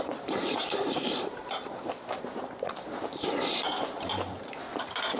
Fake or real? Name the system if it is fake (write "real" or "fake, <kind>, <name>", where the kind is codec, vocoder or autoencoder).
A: fake, vocoder, BigVGAN v2